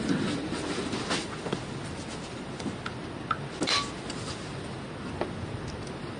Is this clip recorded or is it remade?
recorded